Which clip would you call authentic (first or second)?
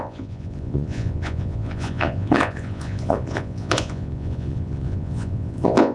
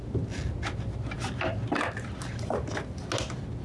second